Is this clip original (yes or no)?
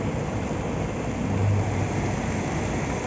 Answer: yes